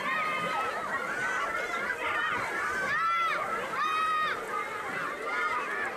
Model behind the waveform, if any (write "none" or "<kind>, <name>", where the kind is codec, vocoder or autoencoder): vocoder, BigVGAN v2